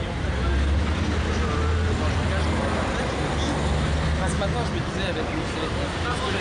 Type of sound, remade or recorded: recorded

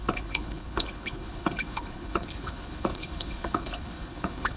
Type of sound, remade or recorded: remade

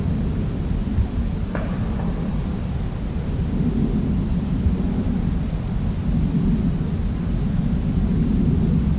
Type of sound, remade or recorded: recorded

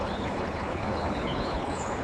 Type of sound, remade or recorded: remade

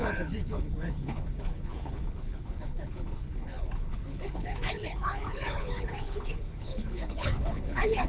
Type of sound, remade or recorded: remade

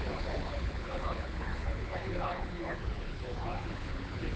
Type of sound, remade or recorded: remade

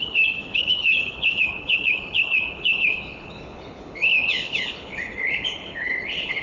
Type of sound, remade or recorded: remade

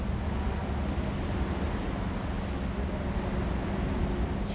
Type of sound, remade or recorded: recorded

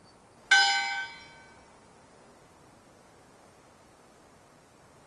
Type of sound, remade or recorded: recorded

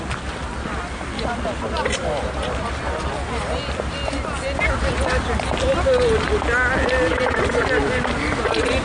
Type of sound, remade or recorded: recorded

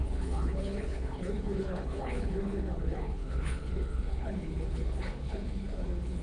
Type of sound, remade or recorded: remade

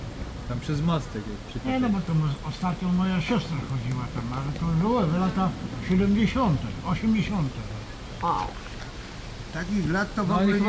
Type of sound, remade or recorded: recorded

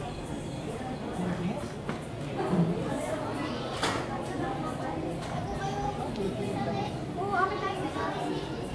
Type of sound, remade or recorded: recorded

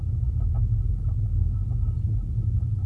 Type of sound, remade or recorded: recorded